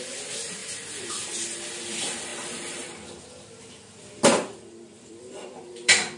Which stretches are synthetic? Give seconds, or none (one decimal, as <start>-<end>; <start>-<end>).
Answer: 2.3-6.2